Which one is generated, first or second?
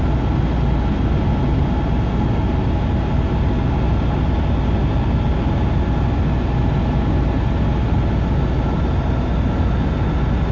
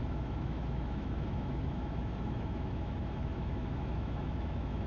second